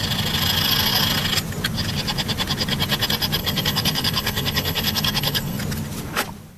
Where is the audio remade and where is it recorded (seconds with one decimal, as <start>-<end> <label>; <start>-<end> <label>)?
0.0-3.4 recorded; 3.4-5.6 remade; 5.6-6.6 recorded